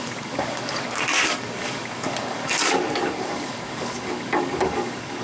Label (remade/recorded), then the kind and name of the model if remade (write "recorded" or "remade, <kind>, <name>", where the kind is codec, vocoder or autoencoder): remade, codec, DAC